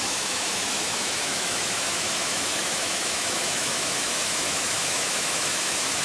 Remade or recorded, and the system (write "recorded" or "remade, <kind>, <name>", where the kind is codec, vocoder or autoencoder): remade, autoencoder, DAC-VAE